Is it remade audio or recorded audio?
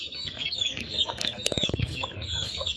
remade